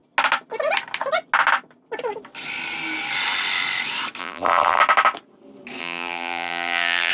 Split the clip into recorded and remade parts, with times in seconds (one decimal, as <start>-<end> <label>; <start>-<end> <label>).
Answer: 0.0-4.2 recorded; 4.2-4.8 remade; 4.8-5.8 recorded; 5.8-7.1 remade

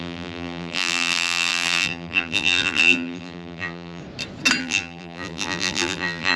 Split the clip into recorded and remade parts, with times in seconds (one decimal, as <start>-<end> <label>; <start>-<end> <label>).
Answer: 0.0-4.0 remade; 4.0-4.6 recorded; 4.6-6.4 remade

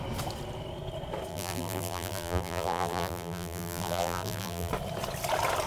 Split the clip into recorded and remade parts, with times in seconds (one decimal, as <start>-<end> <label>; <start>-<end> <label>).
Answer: 0.0-1.3 recorded; 1.3-4.7 remade; 4.7-5.7 recorded

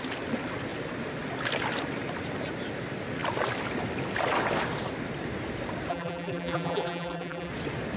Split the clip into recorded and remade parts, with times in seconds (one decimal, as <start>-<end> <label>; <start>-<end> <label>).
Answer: 0.0-5.9 recorded; 5.9-7.5 remade; 7.5-8.0 recorded

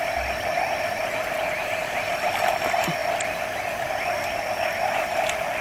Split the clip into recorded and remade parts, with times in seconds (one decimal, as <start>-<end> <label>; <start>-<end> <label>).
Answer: 0.0-1.8 recorded; 1.8-2.4 remade; 2.4-5.6 recorded

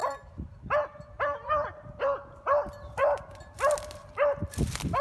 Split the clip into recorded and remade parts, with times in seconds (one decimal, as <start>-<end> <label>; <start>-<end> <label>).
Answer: 0.0-5.0 recorded

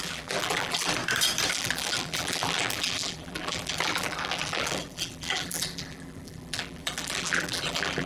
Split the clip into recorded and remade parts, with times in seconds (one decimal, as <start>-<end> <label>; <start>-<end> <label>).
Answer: 0.0-1.0 remade; 1.0-1.5 recorded; 1.5-8.1 remade